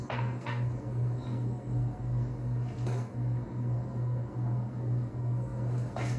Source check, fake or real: fake